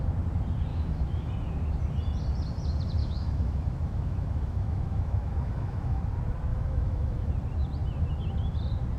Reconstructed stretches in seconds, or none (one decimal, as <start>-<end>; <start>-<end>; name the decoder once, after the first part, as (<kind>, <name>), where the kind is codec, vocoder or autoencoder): 0.7-1.3 (autoencoder, DAC-VAE); 3.0-6.0; 6.5-7.3